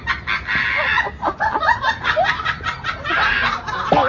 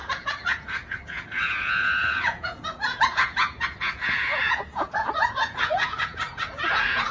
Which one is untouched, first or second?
first